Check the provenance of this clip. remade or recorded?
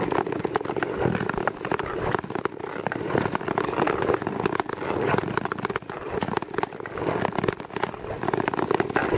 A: recorded